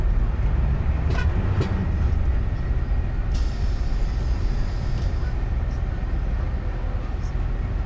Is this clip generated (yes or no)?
no